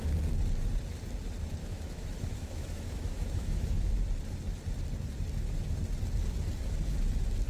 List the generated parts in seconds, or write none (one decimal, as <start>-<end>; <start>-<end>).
1.6-3.9